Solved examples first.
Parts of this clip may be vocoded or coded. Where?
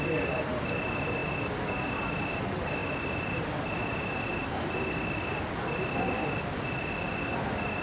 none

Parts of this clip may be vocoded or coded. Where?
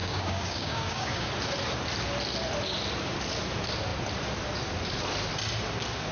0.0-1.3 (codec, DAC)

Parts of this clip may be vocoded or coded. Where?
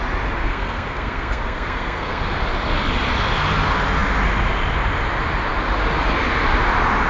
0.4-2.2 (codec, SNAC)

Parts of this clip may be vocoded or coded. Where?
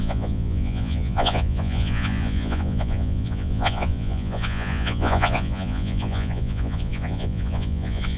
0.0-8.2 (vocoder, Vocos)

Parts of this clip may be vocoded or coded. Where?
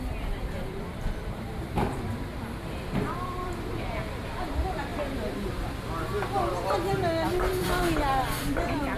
0.4-3.8 (vocoder, BigVGAN v2); 7.5-8.1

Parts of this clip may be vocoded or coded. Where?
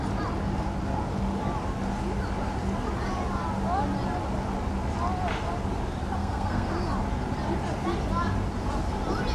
6.2-6.7 (codec, SNAC)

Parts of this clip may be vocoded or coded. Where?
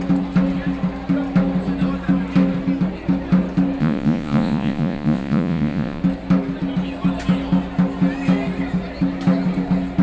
3.8-6.0 (vocoder, Vocos)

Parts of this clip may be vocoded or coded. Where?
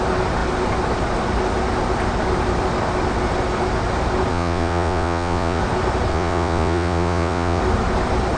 4.3-5.6 (vocoder, Vocos); 6.1-7.6